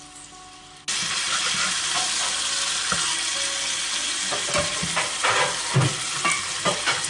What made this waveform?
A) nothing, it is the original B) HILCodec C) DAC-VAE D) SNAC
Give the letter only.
A